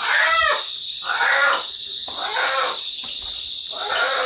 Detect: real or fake real